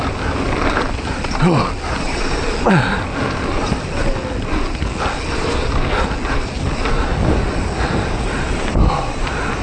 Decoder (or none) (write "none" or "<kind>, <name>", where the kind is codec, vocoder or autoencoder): none